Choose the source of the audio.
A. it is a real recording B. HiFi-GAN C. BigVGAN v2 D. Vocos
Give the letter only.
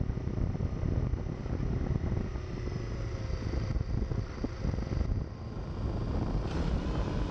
A